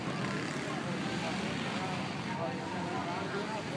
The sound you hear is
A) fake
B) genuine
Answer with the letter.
B